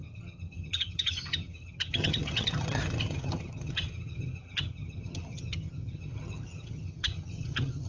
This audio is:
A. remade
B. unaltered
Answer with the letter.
A